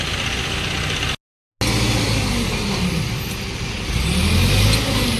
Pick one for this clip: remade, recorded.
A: recorded